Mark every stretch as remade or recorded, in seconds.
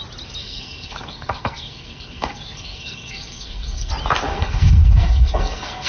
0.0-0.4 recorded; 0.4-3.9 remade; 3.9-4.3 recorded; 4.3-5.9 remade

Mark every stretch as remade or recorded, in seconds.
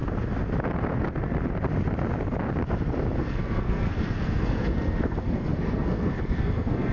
0.0-3.2 recorded; 3.2-6.9 remade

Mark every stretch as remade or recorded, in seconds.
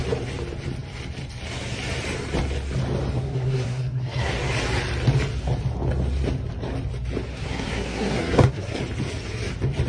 0.0-3.2 recorded; 3.2-4.3 remade; 4.3-7.3 recorded; 7.3-8.8 remade; 8.8-9.9 recorded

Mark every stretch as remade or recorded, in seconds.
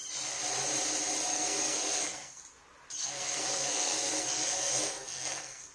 0.0-1.3 recorded; 1.3-2.4 remade; 2.4-3.0 recorded; 3.0-5.7 remade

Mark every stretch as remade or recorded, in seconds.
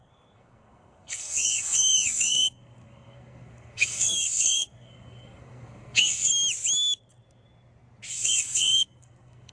0.0-6.3 remade; 6.3-8.1 recorded; 8.1-9.5 remade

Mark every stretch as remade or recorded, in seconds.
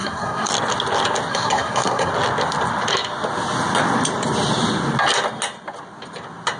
0.0-0.5 remade; 0.5-1.3 recorded; 1.3-2.1 remade; 2.1-6.6 recorded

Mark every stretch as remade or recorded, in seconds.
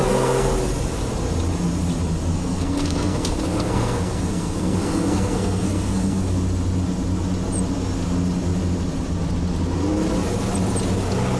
0.0-0.5 remade; 0.5-2.3 recorded; 2.3-6.2 remade; 6.2-11.4 recorded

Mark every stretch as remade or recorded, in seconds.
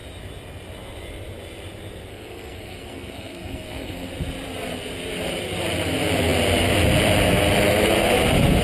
0.0-2.1 recorded; 2.1-4.1 remade; 4.1-8.6 recorded